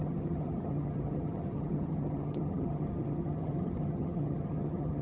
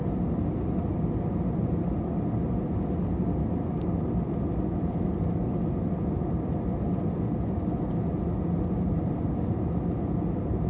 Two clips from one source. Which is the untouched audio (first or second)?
second